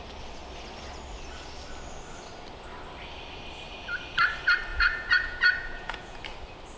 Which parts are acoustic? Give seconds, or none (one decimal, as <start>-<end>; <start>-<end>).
0.0-4.7; 6.2-6.8